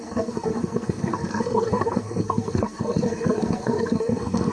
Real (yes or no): no